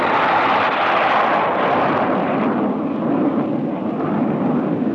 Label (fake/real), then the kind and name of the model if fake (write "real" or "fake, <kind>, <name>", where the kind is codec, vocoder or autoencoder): real